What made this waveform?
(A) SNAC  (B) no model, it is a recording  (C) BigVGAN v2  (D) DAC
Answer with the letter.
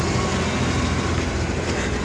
B